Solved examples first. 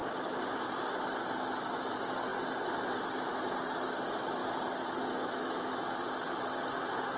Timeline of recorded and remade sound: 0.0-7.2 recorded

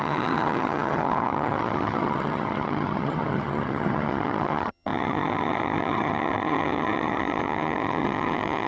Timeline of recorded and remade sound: 0.0-8.7 remade